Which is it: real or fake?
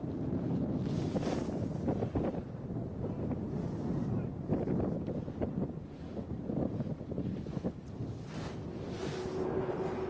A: real